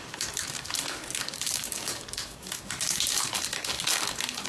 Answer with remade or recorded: remade